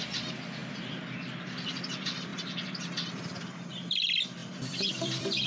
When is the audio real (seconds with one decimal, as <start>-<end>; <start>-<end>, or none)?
2.3-3.7